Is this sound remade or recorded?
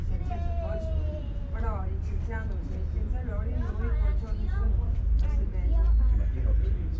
recorded